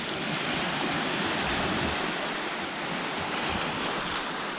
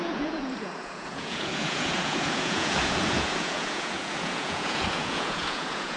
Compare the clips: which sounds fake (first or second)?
second